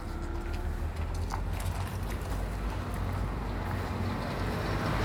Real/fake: real